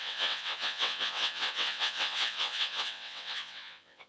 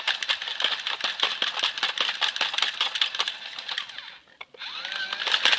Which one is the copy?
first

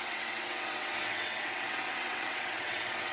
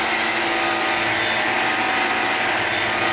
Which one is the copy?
first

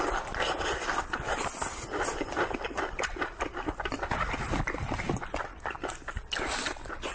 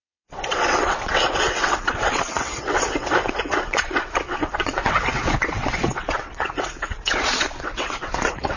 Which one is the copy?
second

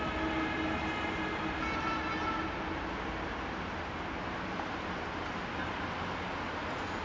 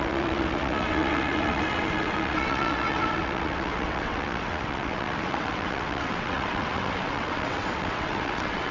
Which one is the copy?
second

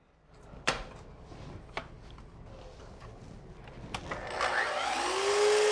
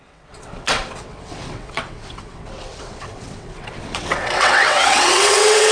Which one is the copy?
second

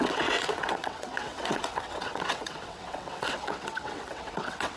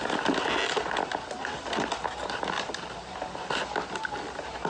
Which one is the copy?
first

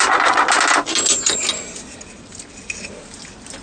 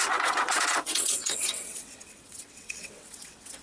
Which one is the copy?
second